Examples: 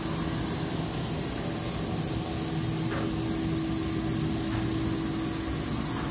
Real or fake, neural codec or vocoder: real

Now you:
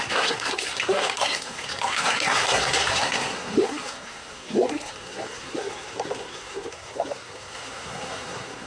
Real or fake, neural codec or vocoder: fake, codec, SNAC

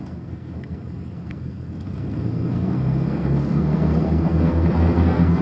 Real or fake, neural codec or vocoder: fake, codec, SNAC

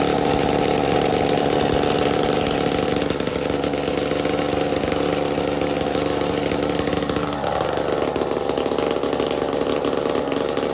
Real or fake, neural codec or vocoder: real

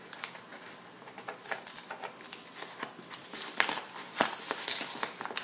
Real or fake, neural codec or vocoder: real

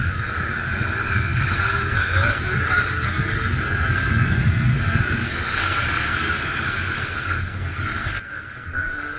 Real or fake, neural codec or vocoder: fake, codec, SNAC